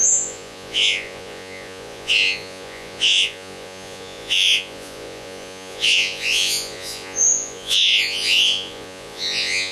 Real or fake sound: fake